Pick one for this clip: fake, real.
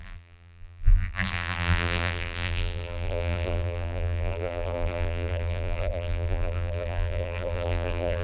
fake